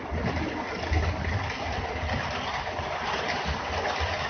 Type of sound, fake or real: real